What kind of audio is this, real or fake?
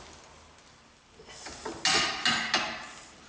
real